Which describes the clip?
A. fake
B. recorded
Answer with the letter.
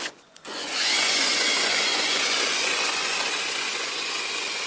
A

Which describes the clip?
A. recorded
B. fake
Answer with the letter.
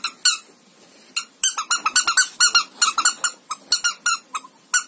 A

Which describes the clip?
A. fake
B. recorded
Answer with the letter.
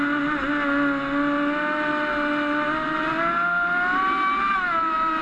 B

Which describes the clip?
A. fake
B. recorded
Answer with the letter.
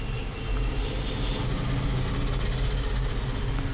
B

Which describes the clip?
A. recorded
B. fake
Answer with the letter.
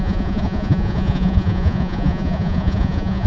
B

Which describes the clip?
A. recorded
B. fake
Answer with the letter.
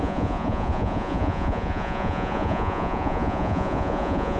B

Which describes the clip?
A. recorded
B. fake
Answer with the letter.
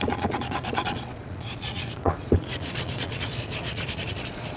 B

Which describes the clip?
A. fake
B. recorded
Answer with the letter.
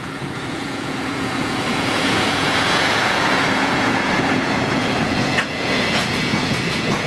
A